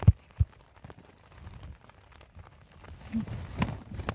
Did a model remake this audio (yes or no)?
no